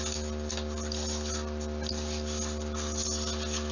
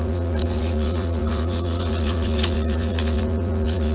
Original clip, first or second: first